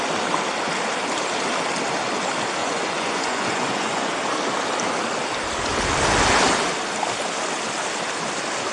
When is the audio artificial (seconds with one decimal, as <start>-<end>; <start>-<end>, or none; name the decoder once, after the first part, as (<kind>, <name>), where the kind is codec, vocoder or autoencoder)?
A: 2.6-4.1 (vocoder, Vocos)